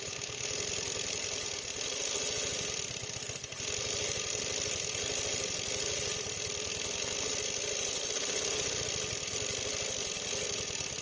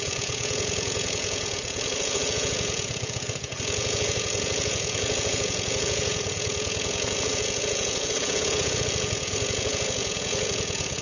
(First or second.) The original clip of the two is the first